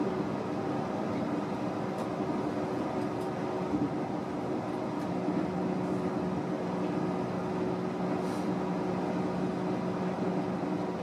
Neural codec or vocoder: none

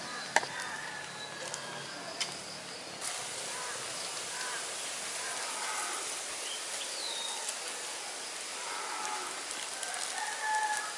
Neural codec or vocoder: none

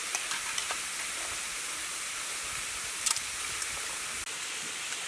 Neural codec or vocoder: none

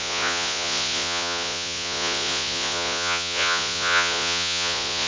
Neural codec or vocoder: vocoder, Vocos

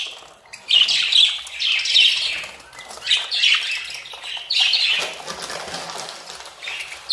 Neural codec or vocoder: none